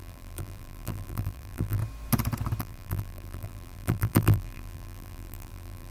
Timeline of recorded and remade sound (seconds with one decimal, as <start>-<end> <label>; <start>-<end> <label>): 0.0-1.8 remade; 1.8-2.6 recorded; 2.6-5.9 remade